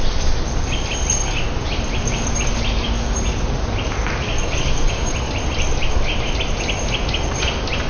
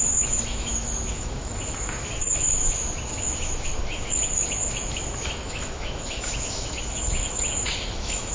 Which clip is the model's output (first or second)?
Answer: second